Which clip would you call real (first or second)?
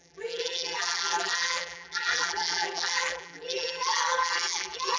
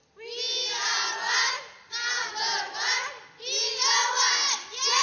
second